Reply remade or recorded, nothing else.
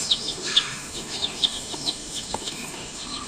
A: remade